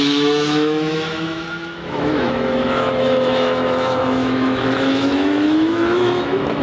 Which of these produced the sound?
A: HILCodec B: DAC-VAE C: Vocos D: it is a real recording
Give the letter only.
B